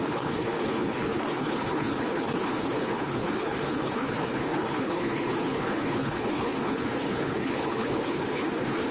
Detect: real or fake fake